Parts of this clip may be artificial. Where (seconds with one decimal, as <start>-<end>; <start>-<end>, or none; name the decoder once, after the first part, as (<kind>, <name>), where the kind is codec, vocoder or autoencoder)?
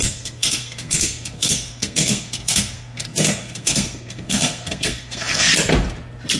0.0-5.5 (codec, SNAC)